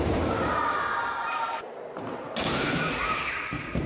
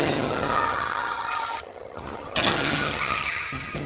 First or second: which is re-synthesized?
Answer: second